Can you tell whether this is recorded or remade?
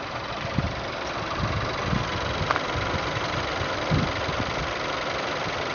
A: recorded